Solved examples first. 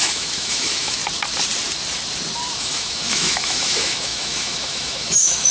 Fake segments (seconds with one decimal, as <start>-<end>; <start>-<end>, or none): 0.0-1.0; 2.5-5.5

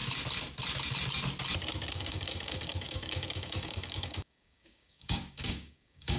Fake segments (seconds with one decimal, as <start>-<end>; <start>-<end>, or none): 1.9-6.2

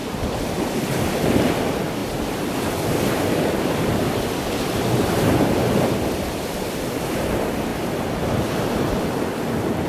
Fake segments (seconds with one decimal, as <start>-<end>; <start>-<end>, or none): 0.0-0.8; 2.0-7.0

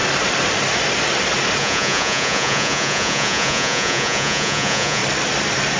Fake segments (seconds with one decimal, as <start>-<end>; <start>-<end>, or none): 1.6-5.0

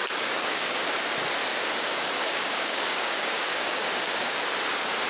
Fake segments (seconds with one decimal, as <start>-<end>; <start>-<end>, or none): 0.0-0.9; 1.5-4.4